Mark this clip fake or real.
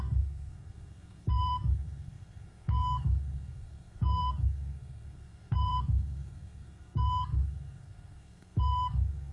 fake